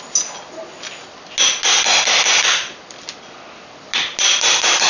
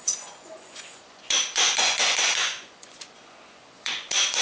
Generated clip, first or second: second